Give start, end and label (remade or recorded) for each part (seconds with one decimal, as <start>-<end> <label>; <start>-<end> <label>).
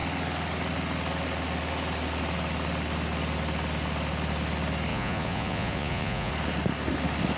0.0-4.9 recorded; 4.9-6.3 remade; 6.3-7.4 recorded